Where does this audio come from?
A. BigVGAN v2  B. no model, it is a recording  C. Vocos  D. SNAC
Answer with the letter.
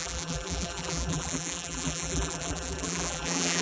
A